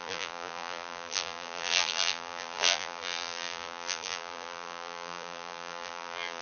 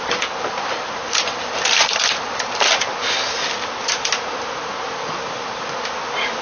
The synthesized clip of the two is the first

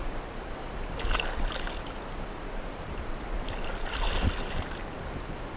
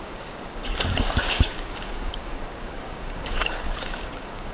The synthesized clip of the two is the second